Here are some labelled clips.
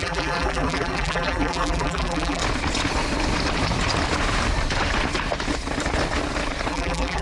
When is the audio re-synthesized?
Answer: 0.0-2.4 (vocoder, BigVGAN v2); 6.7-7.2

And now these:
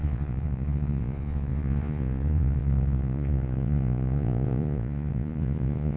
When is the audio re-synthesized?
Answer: 0.0-6.0 (vocoder, Vocos)

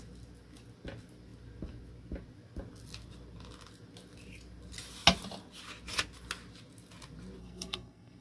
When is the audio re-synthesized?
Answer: 7.4-8.2 (codec, SNAC)

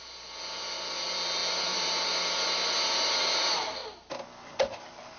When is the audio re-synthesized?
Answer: none

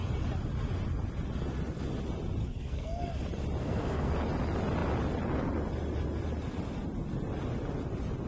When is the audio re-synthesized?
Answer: 2.4-3.1 (codec, SNAC); 3.6-4.1

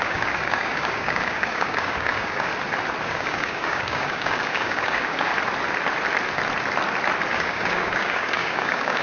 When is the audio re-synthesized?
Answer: 0.0-2.5 (codec, DAC); 3.0-5.3; 7.3-9.0

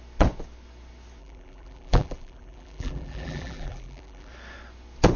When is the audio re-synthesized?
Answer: 1.2-4.3 (vocoder, BigVGAN v2)

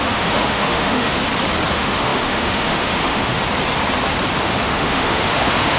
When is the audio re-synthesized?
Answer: 0.0-1.2 (autoencoder, DAC-VAE); 1.7-3.4; 4.4-5.8